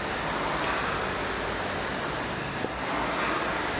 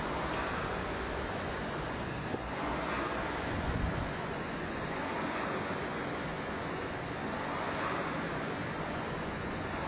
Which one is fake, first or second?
second